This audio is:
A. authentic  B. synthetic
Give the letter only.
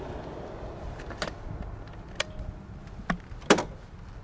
A